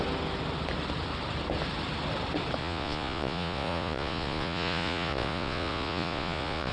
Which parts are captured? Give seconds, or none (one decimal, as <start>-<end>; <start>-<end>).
0.0-2.6